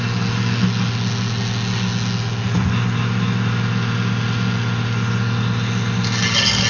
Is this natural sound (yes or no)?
yes